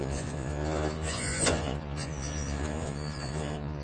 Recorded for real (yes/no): no